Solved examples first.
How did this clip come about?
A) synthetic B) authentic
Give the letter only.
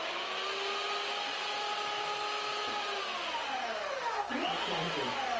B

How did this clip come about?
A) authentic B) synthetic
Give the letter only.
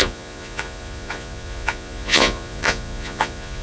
B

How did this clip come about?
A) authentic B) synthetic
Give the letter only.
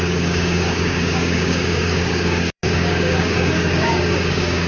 B